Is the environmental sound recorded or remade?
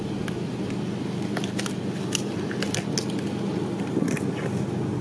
recorded